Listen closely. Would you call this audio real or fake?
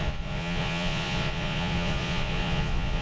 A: fake